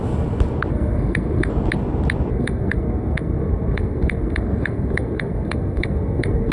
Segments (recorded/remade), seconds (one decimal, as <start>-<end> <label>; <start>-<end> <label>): 0.0-0.7 recorded; 0.7-1.5 remade; 1.5-2.3 recorded; 2.3-6.5 remade